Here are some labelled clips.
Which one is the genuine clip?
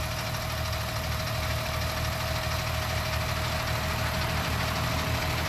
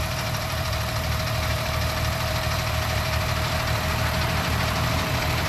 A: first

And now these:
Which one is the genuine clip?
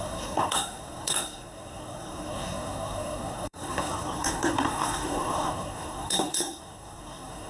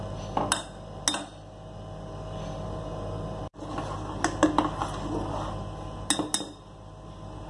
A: second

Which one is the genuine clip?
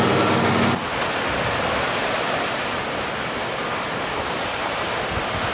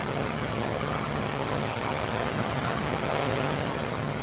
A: first